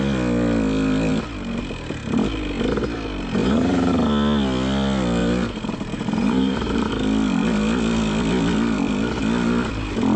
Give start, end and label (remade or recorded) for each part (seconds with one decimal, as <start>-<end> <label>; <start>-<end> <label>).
0.0-3.4 recorded; 3.4-3.9 remade; 3.9-5.2 recorded; 5.2-6.9 remade; 6.9-10.2 recorded

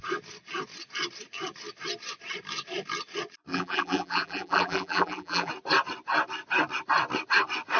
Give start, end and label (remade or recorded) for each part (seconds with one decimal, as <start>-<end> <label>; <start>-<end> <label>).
0.0-3.5 recorded; 3.5-5.5 remade; 5.5-7.8 recorded

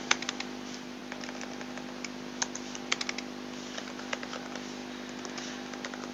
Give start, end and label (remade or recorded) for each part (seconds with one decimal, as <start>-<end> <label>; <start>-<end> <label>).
0.0-1.0 remade; 1.0-3.8 recorded; 3.8-4.8 remade; 4.8-6.1 recorded

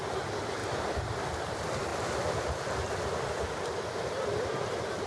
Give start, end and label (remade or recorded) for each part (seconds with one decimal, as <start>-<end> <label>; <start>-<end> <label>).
0.0-0.6 recorded; 0.6-1.2 remade; 1.2-1.9 recorded; 1.9-5.1 remade